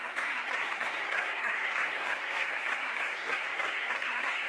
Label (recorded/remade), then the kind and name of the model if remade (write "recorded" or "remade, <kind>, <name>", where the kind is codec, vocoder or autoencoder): remade, codec, SNAC